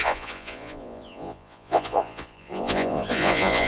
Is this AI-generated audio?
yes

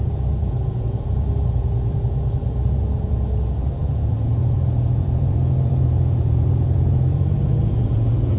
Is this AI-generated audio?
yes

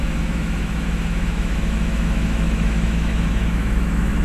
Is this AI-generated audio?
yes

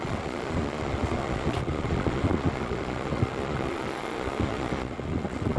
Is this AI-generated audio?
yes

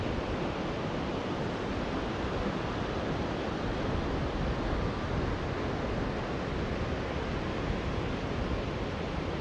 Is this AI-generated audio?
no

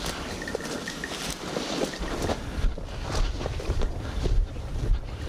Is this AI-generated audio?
no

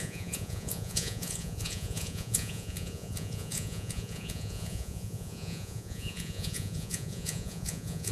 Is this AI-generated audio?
yes